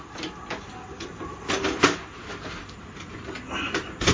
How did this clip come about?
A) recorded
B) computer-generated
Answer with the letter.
A